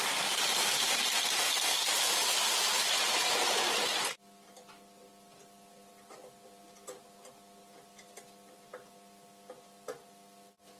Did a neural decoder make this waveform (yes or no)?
no